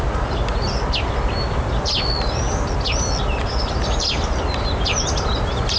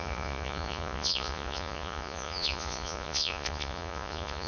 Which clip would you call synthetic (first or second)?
second